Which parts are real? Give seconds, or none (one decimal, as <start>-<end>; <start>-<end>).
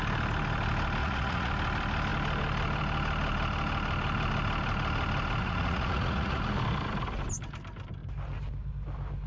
0.0-1.0; 1.5-5.4; 6.4-9.3